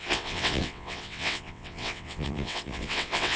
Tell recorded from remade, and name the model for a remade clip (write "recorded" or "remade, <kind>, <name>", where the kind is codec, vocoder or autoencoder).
remade, vocoder, WaveNeXt